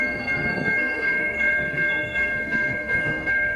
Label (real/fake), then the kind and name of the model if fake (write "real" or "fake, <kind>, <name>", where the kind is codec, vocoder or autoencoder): fake, codec, SNAC